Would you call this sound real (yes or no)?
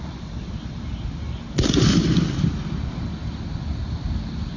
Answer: yes